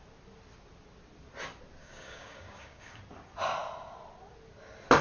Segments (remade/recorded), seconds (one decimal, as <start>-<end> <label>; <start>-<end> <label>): 0.0-1.8 recorded; 1.8-3.0 remade; 3.0-5.0 recorded